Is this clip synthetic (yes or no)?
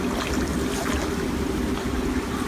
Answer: no